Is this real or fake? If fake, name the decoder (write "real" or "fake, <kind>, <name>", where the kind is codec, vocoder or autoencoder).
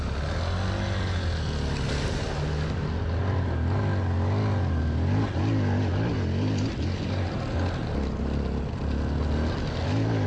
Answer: real